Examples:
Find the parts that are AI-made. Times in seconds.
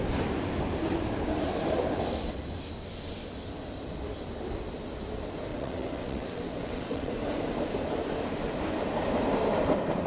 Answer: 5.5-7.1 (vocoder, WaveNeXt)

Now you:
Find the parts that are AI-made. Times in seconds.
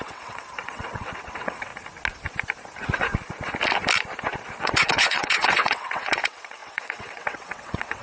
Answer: 0.0-1.7 (vocoder, WaveNeXt); 4.6-8.0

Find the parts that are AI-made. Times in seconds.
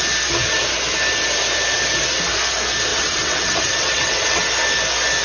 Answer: 2.9-4.4 (vocoder, WaveNeXt)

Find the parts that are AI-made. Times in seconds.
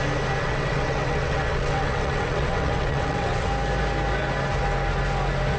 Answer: 0.4-3.5 (vocoder, WaveNeXt)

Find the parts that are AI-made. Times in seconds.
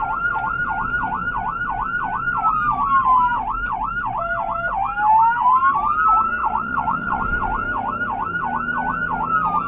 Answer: 6.4-7.2 (vocoder, WaveNeXt)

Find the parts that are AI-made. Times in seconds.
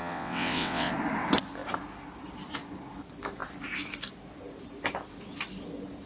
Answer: 0.0-0.9 (vocoder, WaveNeXt)